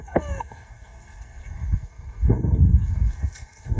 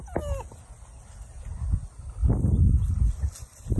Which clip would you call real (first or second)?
second